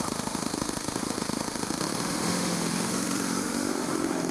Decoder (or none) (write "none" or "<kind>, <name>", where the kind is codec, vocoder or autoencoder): autoencoder, DAC-VAE